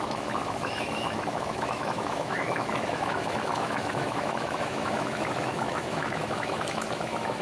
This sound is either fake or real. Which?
fake